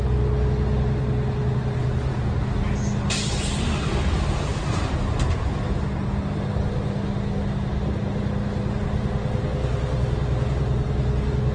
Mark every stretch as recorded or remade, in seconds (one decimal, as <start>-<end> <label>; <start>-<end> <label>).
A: 0.0-11.5 recorded